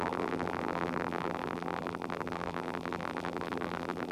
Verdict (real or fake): fake